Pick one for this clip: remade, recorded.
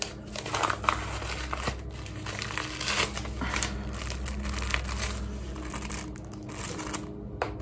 recorded